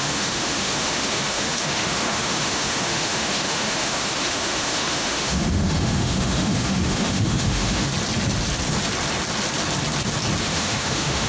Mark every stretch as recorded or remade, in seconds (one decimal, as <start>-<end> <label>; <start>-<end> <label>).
0.0-7.9 remade; 7.9-10.4 recorded; 10.4-11.3 remade